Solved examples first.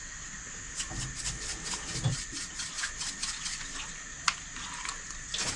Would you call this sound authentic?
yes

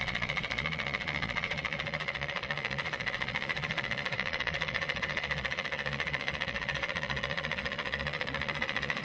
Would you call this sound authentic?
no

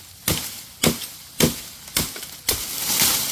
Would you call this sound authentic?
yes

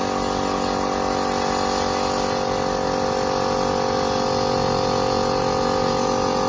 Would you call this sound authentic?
yes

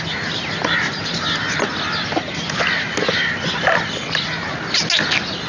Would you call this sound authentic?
yes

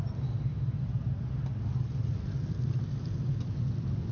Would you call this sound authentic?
yes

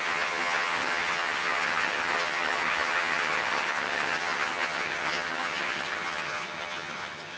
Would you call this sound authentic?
no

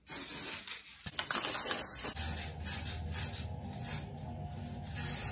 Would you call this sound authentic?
yes